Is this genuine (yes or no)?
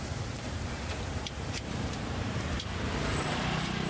no